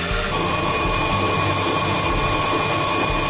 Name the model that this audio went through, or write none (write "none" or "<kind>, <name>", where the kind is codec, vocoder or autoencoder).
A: none